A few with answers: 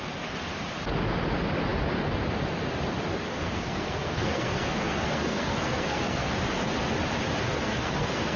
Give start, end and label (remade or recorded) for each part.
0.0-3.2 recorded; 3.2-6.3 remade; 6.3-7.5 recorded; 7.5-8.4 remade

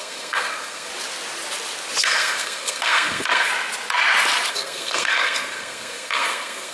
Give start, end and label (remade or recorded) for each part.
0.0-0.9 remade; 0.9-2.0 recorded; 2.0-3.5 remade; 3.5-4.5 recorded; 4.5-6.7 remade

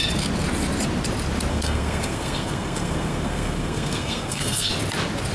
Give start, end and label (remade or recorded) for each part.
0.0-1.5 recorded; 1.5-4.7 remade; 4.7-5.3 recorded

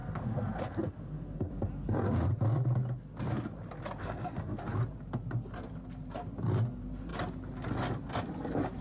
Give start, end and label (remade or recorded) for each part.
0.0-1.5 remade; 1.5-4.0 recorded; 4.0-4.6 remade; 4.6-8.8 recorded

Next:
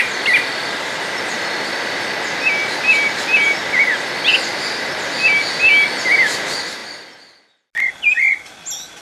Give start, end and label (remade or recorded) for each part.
0.0-9.0 recorded

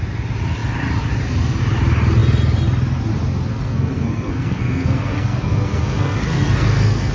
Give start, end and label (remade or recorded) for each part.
0.0-3.5 recorded; 3.5-7.1 remade